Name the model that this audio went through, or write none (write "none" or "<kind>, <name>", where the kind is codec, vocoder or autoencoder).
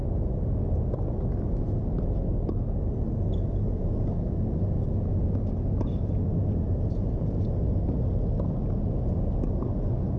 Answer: none